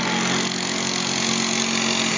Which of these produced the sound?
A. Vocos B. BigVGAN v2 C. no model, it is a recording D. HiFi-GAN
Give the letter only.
C